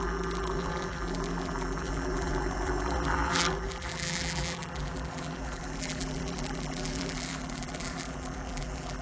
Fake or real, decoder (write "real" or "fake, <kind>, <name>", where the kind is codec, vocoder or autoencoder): fake, vocoder, BigVGAN v2